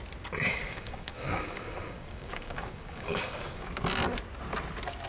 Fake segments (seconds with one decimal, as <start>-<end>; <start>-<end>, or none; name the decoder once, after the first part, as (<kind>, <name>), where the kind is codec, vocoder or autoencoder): 0.6-3.7 (codec, DAC)